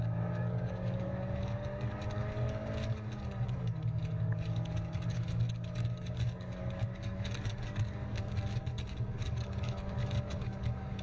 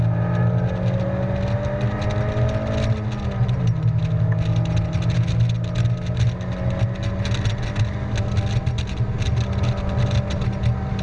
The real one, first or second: second